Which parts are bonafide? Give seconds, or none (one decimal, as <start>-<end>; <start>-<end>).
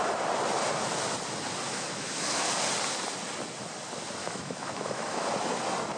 0.0-1.7; 2.5-4.2; 5.2-6.0